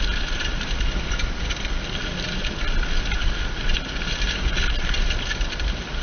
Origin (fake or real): real